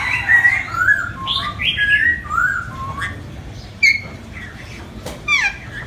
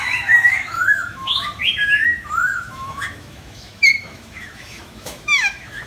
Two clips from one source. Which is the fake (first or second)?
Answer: second